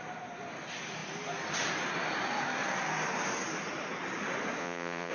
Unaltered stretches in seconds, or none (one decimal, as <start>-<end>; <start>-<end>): 0.0-4.6